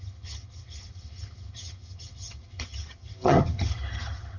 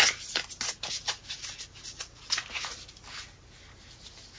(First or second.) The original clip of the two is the second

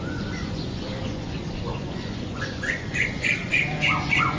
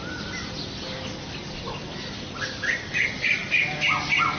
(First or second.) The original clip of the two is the second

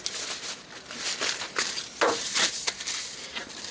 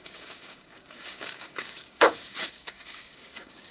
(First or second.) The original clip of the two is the first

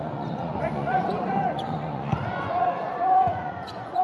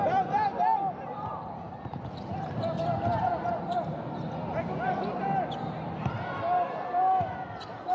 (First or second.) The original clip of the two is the second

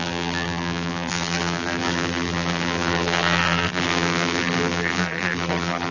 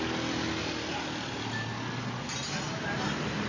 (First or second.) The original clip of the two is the second